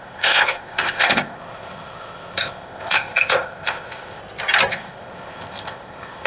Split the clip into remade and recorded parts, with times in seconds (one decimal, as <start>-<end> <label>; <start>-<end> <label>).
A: 0.0-4.2 remade; 4.2-4.7 recorded; 4.7-6.3 remade